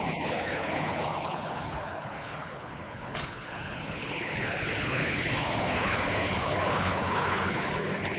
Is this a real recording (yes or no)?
no